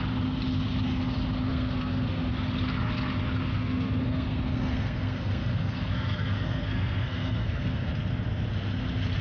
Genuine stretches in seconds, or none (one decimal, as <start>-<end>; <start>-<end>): 0.0-1.5; 2.3-3.5; 7.9-9.2